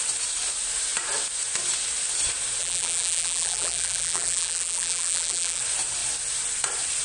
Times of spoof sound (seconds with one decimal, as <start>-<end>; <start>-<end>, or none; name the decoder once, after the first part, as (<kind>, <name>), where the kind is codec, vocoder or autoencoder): 2.6-5.6 (vocoder, BigVGAN v2)